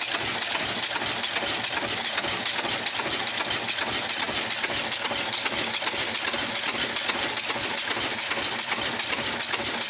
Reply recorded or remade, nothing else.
recorded